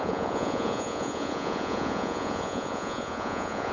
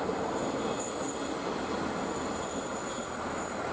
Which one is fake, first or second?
first